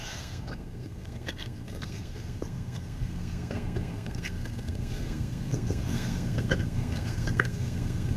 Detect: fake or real fake